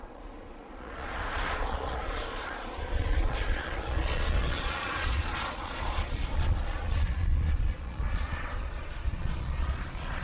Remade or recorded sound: remade